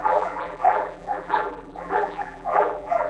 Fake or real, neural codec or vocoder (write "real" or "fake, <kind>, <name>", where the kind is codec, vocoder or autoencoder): fake, vocoder, BigVGAN v2